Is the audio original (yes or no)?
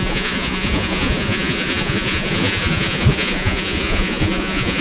no